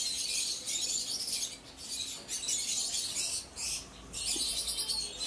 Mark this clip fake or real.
real